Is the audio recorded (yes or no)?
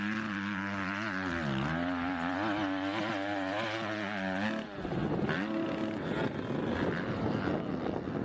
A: yes